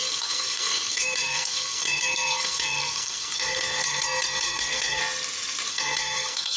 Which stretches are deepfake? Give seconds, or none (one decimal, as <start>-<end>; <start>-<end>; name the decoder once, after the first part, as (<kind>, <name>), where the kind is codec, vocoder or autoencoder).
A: 0.0-5.0 (codec, SNAC); 5.7-6.6